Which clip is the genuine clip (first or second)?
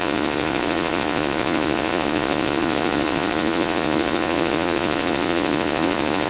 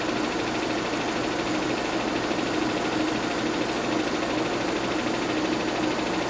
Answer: second